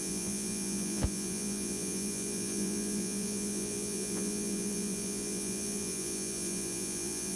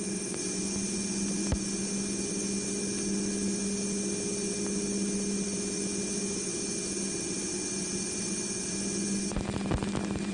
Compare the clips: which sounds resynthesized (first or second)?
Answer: first